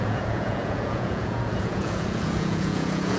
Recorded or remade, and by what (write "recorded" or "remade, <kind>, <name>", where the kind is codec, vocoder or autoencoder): remade, vocoder, Vocos